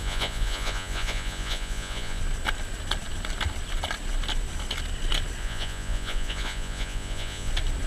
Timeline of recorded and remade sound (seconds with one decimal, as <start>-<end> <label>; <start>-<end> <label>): 0.0-2.2 remade; 2.2-5.4 recorded; 5.4-7.5 remade; 7.5-7.9 recorded